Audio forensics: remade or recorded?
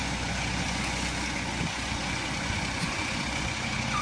remade